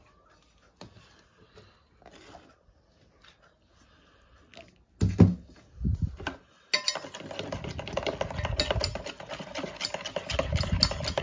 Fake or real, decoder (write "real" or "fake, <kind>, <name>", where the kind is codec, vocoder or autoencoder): real